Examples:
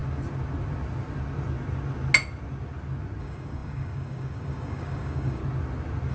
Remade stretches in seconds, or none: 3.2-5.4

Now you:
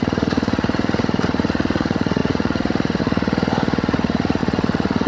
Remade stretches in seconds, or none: 0.0-5.1